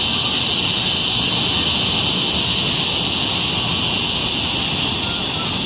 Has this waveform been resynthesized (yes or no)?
no